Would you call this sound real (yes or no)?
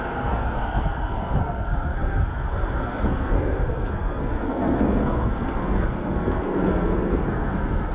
no